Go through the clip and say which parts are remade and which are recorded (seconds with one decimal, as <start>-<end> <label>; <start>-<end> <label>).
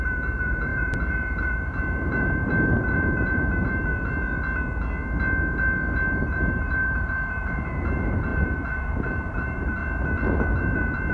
0.0-3.9 remade; 3.9-6.2 recorded; 6.2-9.8 remade; 9.8-11.1 recorded